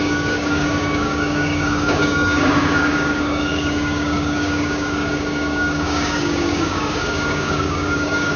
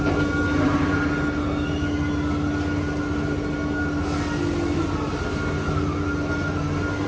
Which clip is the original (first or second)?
second